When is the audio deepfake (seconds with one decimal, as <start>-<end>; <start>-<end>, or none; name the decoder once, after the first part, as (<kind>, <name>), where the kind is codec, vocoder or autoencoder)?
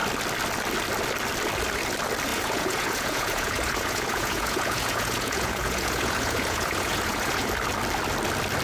2.3-7.5 (vocoder, Vocos)